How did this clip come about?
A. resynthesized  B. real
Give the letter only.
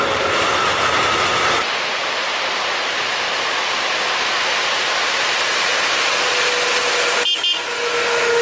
B